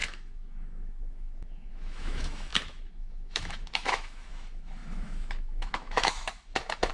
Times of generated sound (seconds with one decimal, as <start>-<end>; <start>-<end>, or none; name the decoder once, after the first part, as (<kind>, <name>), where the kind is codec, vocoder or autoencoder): 0.0-6.9 (autoencoder, DAC-VAE)